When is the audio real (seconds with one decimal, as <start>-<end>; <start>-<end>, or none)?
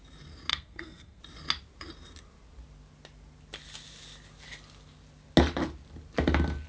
0.0-0.5; 1.2-6.7